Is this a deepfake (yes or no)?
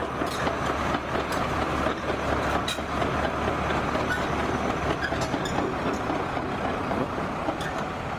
no